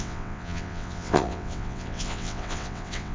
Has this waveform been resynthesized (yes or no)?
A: yes